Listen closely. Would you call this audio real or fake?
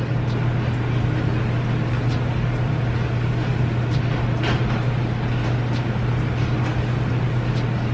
real